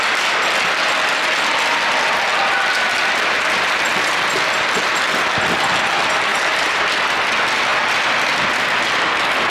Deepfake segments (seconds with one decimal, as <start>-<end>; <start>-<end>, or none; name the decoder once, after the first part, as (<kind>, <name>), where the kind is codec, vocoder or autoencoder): 6.3-6.8 (vocoder, BigVGAN v2)

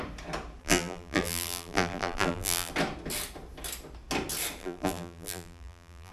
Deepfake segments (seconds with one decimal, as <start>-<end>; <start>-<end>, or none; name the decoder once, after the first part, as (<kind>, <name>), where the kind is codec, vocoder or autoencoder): 0.6-2.7 (vocoder, BigVGAN v2); 4.6-6.1